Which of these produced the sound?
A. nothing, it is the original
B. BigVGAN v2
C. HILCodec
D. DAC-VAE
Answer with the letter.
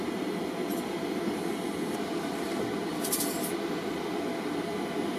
A